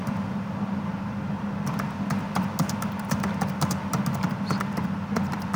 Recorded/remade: recorded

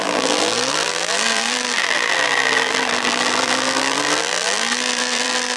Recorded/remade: remade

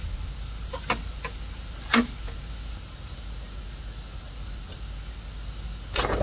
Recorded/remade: recorded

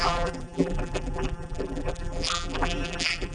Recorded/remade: remade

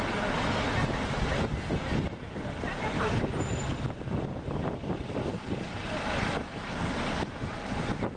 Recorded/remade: recorded